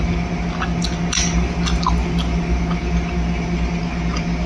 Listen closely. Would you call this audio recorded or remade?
recorded